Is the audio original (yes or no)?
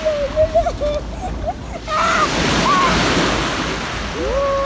yes